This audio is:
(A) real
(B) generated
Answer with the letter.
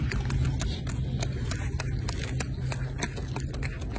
A